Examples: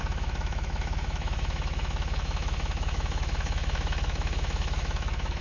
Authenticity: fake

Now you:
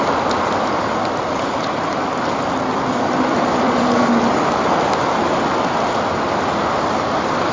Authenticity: real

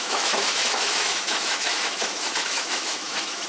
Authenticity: fake